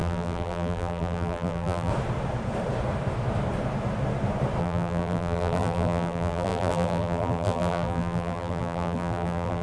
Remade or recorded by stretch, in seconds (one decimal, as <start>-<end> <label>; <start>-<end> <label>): 0.0-1.9 remade; 1.9-4.6 recorded; 4.6-9.6 remade

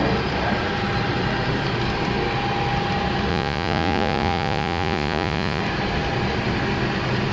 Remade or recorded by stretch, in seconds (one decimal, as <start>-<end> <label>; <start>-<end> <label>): 0.0-3.3 recorded; 3.3-5.6 remade; 5.6-7.3 recorded

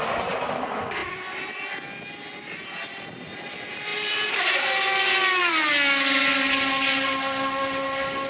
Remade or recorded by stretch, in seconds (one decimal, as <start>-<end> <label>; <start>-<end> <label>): 0.0-8.3 recorded

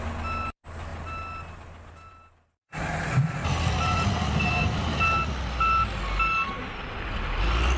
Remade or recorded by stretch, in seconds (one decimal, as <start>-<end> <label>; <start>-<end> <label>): 0.0-7.8 recorded

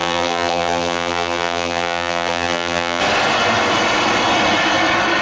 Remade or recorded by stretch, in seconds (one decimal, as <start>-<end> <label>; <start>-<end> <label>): 0.0-3.0 remade; 3.0-5.2 recorded

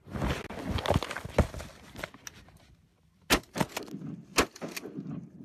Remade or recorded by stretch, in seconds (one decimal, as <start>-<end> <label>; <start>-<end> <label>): 0.0-5.4 recorded